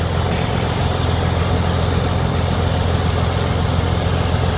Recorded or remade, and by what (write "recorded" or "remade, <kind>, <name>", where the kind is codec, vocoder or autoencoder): recorded